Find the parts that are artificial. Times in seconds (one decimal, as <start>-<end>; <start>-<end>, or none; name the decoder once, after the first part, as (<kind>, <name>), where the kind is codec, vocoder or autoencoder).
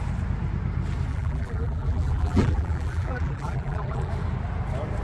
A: 1.1-4.1 (vocoder, BigVGAN v2)